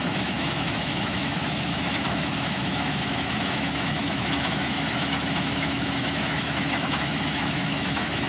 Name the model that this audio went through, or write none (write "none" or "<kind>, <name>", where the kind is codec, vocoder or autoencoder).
autoencoder, DAC-VAE